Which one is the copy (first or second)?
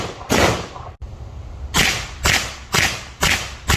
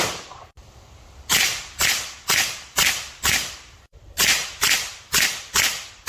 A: second